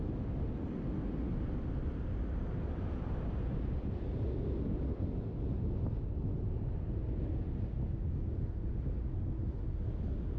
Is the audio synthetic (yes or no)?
no